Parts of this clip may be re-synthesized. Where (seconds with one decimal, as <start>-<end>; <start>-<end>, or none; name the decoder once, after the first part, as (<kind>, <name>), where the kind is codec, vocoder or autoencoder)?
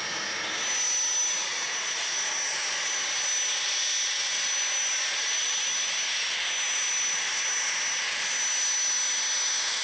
none